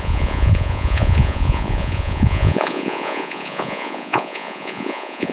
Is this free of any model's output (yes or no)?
no